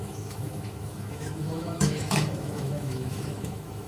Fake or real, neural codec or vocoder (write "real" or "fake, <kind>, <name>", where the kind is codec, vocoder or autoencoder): fake, autoencoder, DAC-VAE